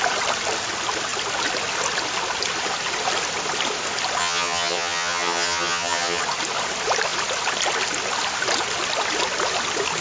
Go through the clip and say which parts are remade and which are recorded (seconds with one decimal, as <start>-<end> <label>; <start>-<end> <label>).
0.0-4.2 recorded; 4.2-6.2 remade; 6.2-10.0 recorded